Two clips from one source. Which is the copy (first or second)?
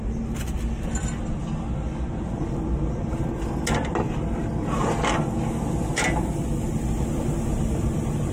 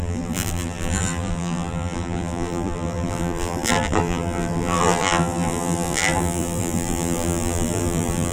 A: second